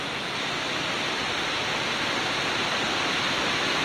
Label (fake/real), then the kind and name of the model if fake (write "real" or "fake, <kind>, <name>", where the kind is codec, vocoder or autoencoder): real